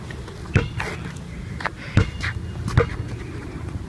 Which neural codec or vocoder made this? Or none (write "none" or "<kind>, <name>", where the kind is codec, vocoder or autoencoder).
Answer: none